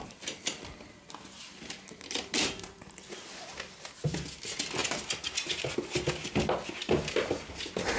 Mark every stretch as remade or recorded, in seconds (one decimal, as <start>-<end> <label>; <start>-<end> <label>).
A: 0.0-8.0 recorded